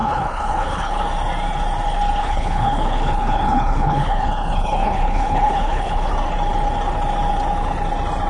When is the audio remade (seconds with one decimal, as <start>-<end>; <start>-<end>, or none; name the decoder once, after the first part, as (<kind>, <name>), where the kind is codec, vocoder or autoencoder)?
0.0-1.0 (codec, HILCodec); 2.2-6.1